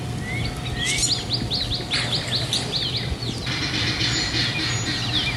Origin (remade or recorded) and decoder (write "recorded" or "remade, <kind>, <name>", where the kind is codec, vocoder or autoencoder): recorded